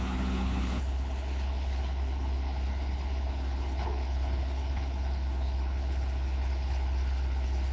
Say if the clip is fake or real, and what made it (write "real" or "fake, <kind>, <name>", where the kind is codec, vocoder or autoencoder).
fake, codec, HILCodec